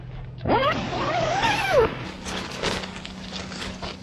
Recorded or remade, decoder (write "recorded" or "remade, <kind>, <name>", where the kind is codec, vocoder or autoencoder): remade, codec, DAC